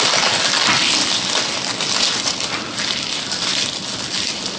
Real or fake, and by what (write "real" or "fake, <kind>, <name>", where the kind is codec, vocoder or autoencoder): real